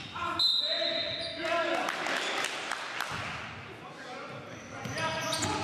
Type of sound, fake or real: real